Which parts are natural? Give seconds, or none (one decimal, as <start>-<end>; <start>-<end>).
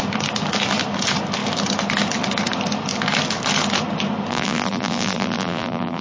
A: 0.0-4.3